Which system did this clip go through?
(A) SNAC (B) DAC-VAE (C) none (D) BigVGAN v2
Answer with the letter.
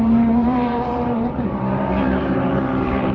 D